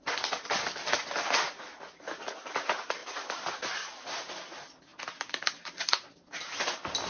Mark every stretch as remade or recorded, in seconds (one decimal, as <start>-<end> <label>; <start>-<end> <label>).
0.0-7.1 recorded